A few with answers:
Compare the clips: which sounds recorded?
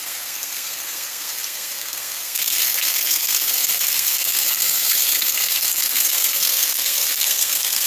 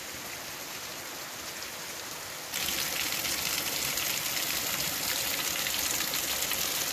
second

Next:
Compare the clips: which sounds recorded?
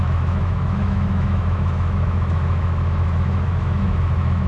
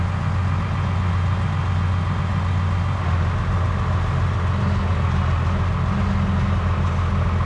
second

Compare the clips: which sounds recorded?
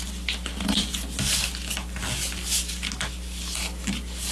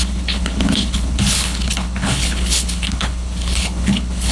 first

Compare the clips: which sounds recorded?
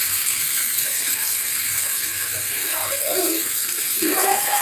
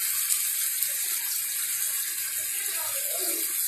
second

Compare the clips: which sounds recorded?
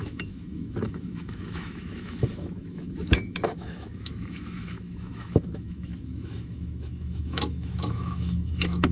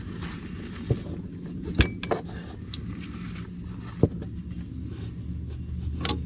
second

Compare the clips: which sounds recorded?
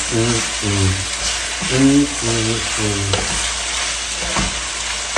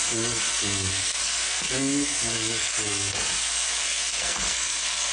first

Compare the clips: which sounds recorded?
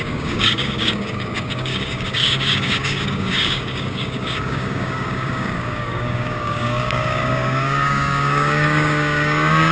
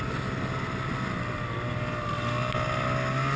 second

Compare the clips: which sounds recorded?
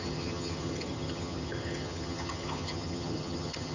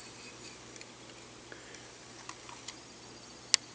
second